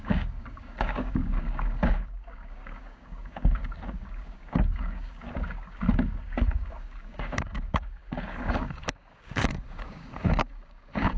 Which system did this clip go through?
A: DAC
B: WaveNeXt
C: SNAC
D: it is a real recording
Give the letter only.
A